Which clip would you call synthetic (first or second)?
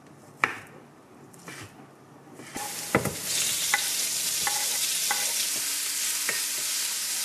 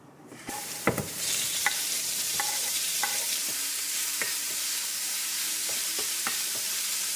second